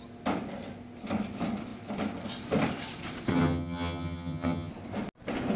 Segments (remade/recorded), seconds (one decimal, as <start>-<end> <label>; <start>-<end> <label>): 0.0-3.3 recorded; 3.3-4.7 remade; 4.7-5.6 recorded